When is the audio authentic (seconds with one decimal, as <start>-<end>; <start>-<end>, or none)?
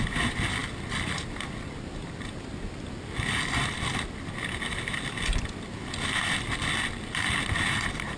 0.0-8.2